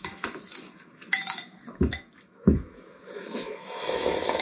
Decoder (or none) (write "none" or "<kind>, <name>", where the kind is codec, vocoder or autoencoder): autoencoder, DAC-VAE